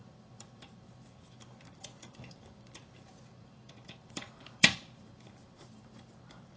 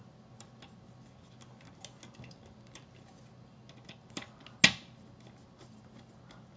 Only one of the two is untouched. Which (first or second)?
second